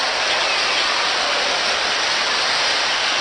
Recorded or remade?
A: recorded